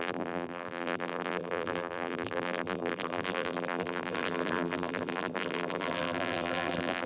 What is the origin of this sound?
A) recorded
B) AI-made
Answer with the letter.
B